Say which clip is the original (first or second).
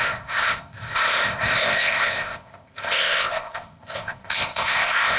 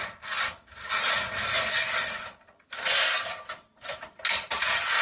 second